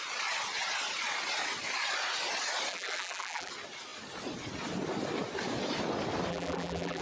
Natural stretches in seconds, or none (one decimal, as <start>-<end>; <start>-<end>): 0.0-2.7; 3.5-6.3